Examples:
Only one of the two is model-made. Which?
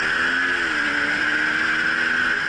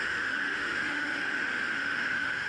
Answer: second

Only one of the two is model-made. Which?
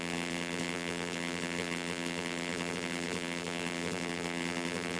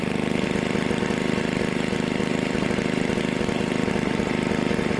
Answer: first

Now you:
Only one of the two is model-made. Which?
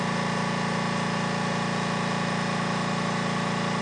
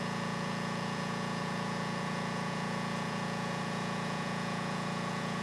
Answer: second